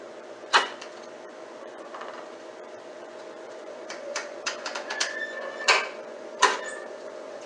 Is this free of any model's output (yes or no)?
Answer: no